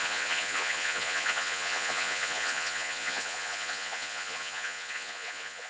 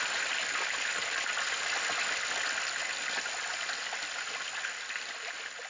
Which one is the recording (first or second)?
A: second